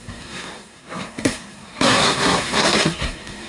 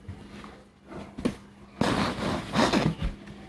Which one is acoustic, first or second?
second